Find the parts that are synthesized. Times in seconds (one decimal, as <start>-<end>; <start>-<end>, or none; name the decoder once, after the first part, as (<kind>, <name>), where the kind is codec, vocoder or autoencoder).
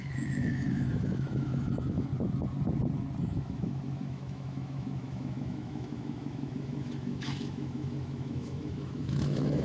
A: 0.0-2.1 (autoencoder, DAC-VAE); 3.2-9.6